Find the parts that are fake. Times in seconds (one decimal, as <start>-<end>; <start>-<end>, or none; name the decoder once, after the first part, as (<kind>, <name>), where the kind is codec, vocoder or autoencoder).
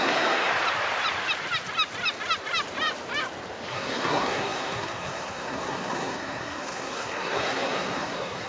0.0-0.5 (codec, SNAC); 3.7-8.5